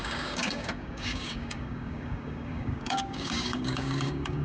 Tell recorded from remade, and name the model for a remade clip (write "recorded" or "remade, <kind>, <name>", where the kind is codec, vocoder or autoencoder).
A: remade, codec, DAC